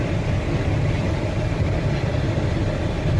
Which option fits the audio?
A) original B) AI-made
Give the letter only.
A